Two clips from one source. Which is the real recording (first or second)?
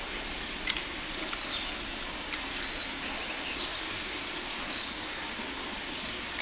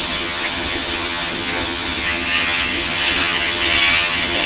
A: first